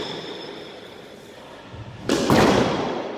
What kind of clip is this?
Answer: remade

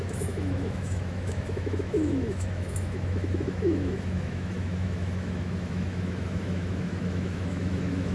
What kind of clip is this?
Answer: remade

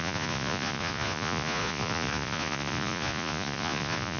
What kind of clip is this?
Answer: remade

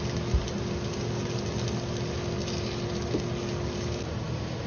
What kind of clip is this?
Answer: recorded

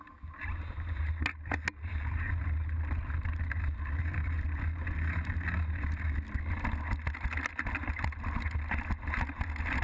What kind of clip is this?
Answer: recorded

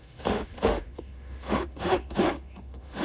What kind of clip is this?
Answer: remade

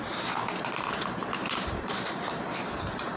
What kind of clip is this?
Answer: remade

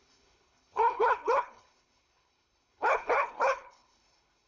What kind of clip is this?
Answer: remade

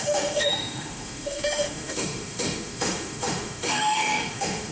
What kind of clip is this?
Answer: remade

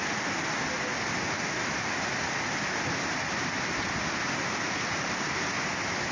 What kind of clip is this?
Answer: recorded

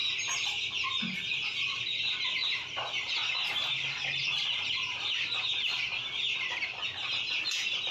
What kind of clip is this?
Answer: recorded